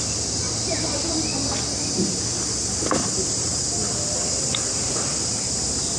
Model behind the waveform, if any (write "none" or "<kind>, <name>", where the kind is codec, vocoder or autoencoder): none